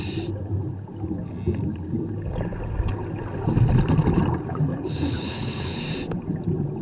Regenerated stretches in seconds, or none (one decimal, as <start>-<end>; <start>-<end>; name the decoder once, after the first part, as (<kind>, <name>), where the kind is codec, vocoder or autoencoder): 4.7-5.8 (codec, HILCodec)